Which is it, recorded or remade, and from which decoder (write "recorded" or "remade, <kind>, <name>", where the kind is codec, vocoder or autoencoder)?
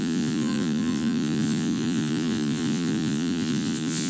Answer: remade, vocoder, Vocos